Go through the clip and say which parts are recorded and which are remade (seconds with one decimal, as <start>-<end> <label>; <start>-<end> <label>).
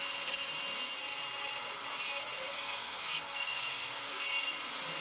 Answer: 0.0-2.5 recorded; 2.5-4.5 remade; 4.5-5.0 recorded